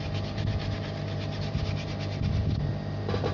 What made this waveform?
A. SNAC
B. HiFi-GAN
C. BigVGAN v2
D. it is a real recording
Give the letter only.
D